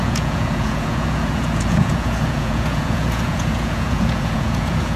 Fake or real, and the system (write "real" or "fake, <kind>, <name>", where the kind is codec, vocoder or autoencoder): fake, vocoder, Vocos